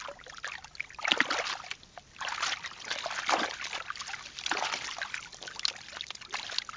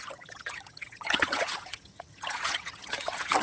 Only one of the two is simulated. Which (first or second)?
second